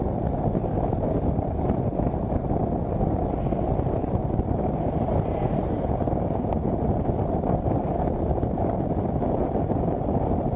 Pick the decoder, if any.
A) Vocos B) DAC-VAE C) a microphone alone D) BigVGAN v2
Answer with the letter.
C